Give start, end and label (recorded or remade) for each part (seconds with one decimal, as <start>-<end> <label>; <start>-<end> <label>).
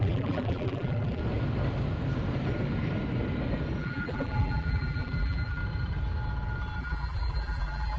0.0-1.2 remade; 1.2-3.8 recorded; 3.8-5.6 remade; 5.6-6.8 recorded; 6.8-8.0 remade